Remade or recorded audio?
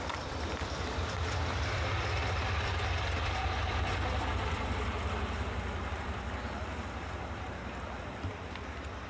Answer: remade